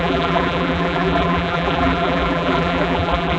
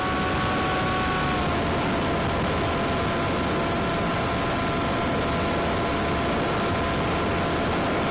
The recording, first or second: second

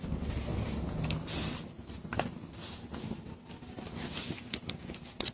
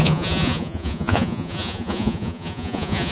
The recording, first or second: first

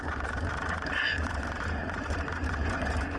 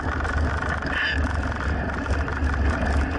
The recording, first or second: second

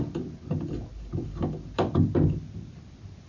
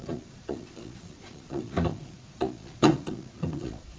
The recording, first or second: first